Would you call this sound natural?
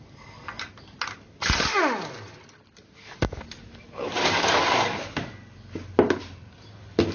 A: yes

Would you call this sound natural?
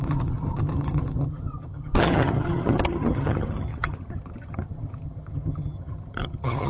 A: no